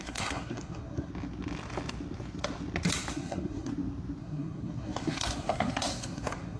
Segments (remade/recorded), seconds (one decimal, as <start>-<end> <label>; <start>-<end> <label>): 0.0-1.1 remade; 1.1-3.1 recorded; 3.1-3.7 remade; 3.7-4.2 recorded; 4.2-6.6 remade